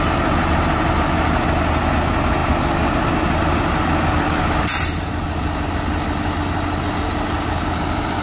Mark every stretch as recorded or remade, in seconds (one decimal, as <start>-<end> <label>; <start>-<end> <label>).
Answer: 0.0-8.2 recorded